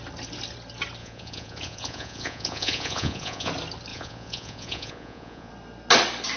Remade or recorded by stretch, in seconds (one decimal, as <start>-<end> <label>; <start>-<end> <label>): 0.0-1.0 recorded; 1.0-3.5 remade; 3.5-3.9 recorded; 3.9-5.5 remade; 5.5-6.4 recorded

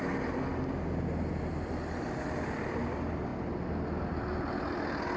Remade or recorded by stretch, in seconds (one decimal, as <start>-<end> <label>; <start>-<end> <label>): 0.0-5.2 recorded

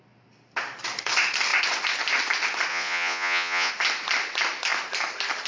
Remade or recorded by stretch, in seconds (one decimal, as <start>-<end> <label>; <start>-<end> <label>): 0.0-2.7 recorded; 2.7-3.7 remade; 3.7-5.5 recorded